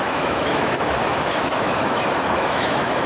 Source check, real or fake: fake